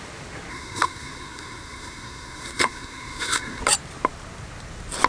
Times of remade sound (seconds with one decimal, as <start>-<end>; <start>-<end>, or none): 0.5-3.6